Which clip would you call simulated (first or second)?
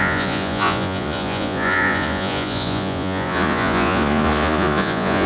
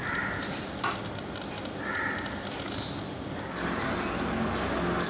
first